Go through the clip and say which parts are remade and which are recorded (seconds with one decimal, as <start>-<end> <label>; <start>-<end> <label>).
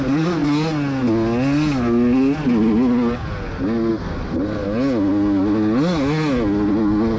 0.0-7.2 recorded